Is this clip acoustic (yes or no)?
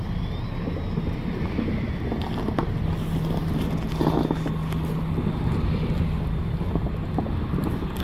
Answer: yes